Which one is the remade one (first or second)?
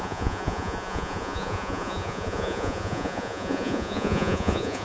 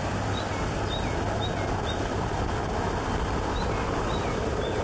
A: first